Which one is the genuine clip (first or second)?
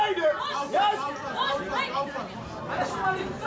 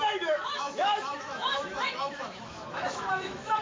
first